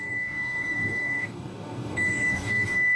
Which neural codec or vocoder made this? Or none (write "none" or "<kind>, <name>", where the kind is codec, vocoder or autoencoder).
codec, DAC